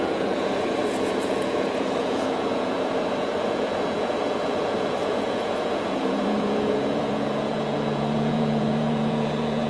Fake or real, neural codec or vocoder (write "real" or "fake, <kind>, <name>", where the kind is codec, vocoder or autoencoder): fake, vocoder, Vocos